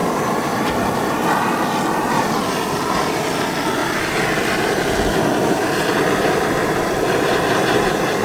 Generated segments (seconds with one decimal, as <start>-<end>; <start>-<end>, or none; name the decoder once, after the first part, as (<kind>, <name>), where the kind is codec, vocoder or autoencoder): 3.8-8.2 (vocoder, BigVGAN v2)